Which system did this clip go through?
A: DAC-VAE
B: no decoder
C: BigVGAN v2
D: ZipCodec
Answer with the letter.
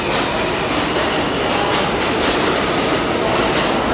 B